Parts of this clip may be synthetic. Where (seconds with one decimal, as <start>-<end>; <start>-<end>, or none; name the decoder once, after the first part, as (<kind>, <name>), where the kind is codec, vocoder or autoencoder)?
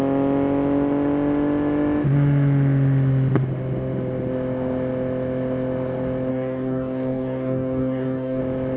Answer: 6.3-8.4 (codec, DAC)